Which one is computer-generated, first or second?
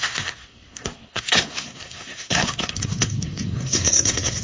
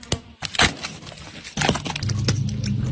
first